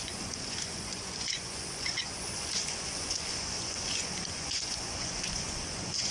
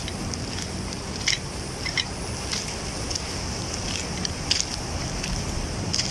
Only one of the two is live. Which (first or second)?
second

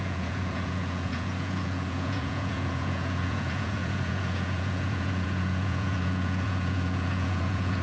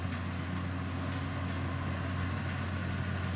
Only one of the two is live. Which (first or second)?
second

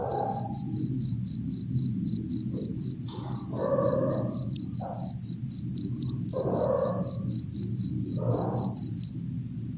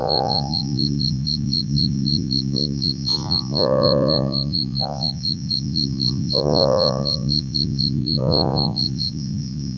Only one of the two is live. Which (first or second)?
first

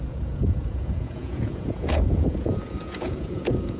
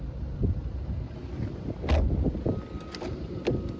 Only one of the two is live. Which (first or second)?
second